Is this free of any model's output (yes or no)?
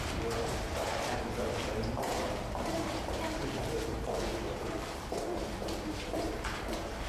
no